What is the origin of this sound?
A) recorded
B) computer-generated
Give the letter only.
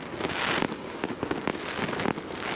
A